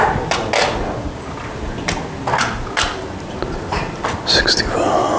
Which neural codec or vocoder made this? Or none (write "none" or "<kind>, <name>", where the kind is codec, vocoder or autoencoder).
none